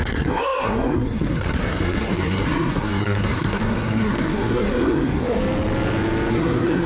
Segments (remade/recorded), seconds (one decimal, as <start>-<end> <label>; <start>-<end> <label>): 0.0-5.4 remade; 5.4-6.3 recorded; 6.3-6.9 remade